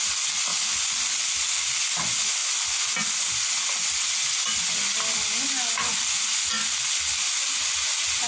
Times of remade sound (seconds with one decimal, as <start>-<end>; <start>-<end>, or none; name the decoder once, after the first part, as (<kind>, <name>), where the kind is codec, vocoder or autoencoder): none